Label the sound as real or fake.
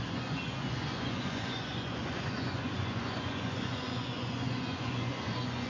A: fake